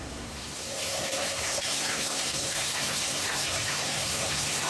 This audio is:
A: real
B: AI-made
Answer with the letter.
B